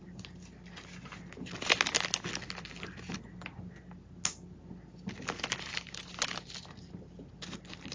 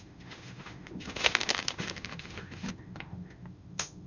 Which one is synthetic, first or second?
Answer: second